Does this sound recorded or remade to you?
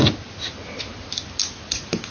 recorded